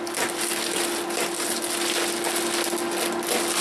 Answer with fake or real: real